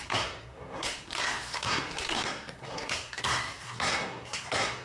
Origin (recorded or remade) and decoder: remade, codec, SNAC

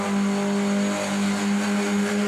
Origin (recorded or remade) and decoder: recorded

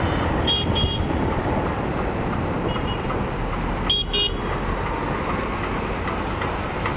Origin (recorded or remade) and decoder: recorded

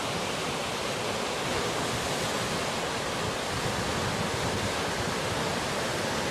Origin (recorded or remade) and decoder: recorded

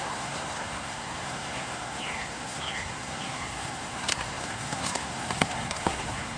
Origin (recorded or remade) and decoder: remade, codec, SNAC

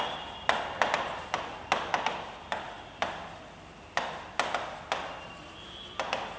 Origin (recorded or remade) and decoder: recorded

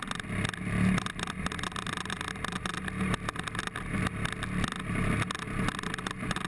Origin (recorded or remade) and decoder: recorded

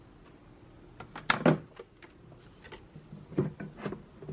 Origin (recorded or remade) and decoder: recorded